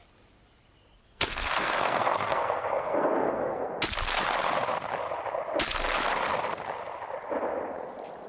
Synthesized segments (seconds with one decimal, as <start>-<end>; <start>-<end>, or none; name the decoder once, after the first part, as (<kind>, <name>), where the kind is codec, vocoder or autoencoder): 1.0-3.7 (codec, SNAC)